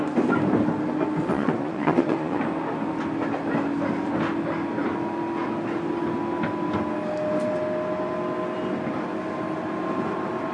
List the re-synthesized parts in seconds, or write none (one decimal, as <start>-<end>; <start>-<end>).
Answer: 1.3-2.4